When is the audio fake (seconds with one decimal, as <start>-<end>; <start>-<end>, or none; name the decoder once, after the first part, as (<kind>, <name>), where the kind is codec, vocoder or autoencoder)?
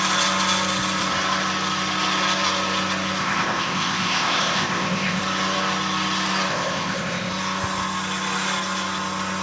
3.2-5.2 (codec, ZipCodec); 6.5-7.3